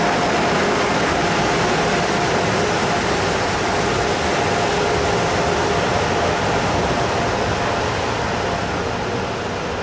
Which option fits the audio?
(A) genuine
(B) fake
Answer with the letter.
A